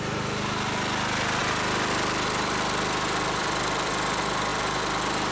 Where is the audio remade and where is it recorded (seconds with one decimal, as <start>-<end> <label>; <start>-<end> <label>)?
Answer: 0.0-1.4 recorded; 1.4-3.9 remade; 3.9-5.3 recorded